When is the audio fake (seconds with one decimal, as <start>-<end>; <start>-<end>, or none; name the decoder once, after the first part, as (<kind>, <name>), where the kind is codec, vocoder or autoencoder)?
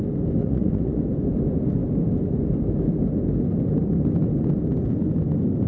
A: 0.4-1.0 (vocoder, Vocos)